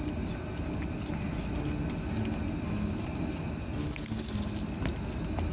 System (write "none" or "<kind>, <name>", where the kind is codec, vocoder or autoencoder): none